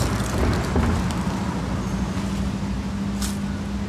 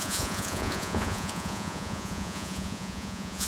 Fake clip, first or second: second